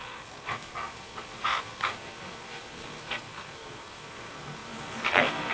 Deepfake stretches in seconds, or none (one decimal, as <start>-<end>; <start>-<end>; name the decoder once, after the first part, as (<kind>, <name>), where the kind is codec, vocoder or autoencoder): 0.0-5.5 (codec, SNAC)